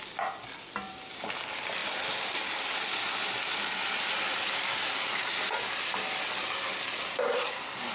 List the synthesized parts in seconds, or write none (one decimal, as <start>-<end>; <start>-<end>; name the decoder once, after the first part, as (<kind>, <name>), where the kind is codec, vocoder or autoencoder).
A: 0.0-7.9 (vocoder, BigVGAN v2)